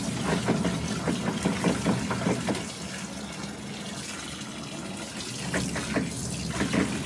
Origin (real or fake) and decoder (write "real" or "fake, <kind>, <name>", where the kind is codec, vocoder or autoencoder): real